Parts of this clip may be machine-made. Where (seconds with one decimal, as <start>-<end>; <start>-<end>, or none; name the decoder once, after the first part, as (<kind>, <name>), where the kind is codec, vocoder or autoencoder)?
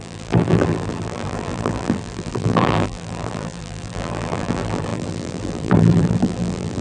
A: 0.0-6.8 (vocoder, BigVGAN v2)